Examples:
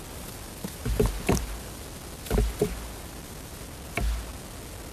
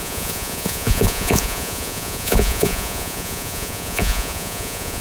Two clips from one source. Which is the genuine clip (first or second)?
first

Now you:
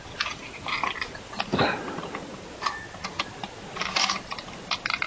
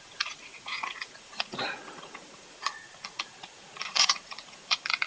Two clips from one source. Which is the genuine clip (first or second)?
first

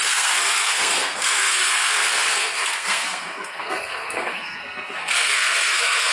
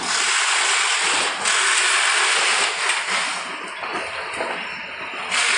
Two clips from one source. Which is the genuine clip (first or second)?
second